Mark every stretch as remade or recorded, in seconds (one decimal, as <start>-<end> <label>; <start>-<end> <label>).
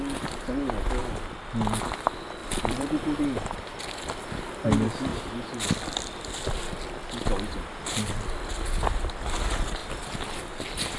0.0-2.4 recorded; 2.4-3.2 remade; 3.2-5.1 recorded; 5.1-9.4 remade; 9.4-11.0 recorded